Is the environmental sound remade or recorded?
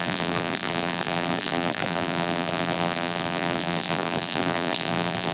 remade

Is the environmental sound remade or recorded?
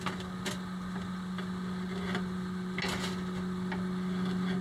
recorded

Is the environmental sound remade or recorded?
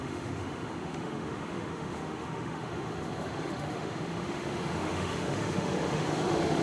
remade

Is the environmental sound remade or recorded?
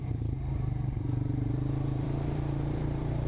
remade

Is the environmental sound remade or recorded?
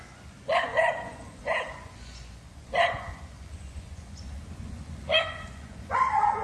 remade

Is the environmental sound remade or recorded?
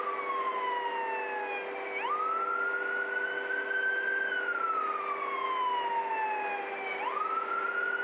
recorded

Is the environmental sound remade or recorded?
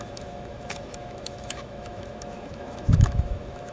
remade